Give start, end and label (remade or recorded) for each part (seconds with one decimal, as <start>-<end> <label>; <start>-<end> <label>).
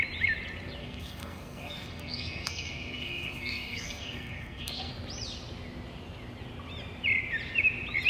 0.0-0.8 recorded; 0.8-4.9 remade; 4.9-8.1 recorded